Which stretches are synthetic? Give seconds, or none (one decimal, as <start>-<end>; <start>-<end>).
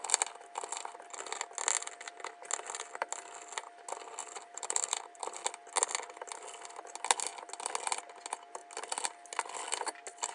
4.2-5.4